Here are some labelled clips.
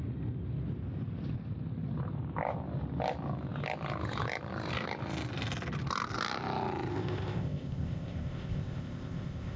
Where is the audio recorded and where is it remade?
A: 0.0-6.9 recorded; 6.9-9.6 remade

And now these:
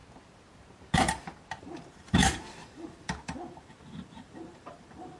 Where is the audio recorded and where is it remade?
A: 0.0-1.6 recorded; 1.6-5.2 remade